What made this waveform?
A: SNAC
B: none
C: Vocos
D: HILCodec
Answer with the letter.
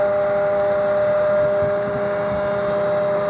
B